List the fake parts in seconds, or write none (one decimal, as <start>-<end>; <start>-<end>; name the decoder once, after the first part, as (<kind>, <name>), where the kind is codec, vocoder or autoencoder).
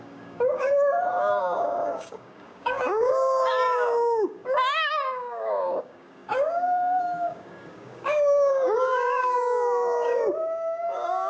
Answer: 0.0-0.7 (codec, DAC); 1.4-11.3